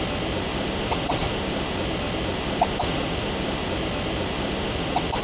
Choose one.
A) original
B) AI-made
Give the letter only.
A